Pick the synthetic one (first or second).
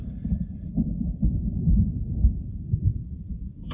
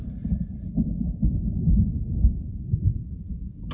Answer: first